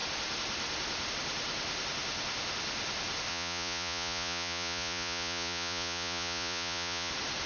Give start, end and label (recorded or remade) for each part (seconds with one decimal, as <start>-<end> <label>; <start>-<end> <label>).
0.0-3.3 recorded; 3.3-7.1 remade; 7.1-7.5 recorded